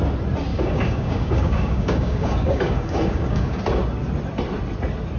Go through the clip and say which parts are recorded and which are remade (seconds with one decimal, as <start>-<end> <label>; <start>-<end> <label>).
0.0-0.5 recorded; 0.5-3.6 remade; 3.6-5.2 recorded

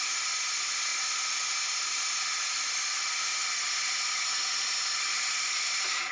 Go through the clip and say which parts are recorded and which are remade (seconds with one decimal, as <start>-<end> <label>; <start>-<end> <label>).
0.0-6.1 recorded